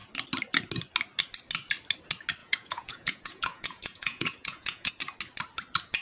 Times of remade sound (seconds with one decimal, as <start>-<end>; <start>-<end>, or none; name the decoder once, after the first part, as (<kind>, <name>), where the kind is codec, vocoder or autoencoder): 2.4-4.9 (vocoder, Vocos)